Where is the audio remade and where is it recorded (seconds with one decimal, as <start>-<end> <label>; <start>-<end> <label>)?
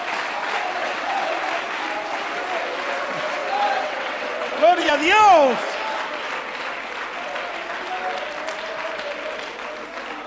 0.0-0.8 recorded; 0.8-1.4 remade; 1.4-3.4 recorded; 3.4-4.9 remade; 4.9-10.3 recorded